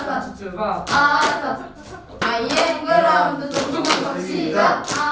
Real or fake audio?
real